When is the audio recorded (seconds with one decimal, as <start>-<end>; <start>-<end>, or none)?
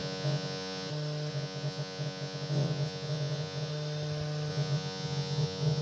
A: 0.9-1.3; 3.7-4.5